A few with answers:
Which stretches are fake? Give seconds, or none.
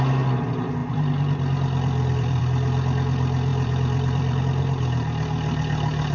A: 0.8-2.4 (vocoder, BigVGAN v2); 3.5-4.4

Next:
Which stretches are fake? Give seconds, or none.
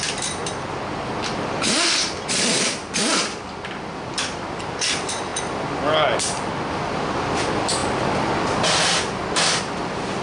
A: 0.0-0.4 (vocoder, BigVGAN v2); 1.6-5.3; 6.7-7.8; 9.6-10.2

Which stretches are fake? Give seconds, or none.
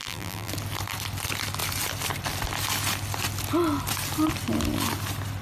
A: 0.0-0.5 (vocoder, BigVGAN v2)